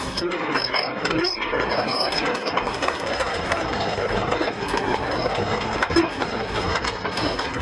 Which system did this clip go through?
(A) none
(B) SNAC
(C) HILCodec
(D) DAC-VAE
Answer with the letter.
B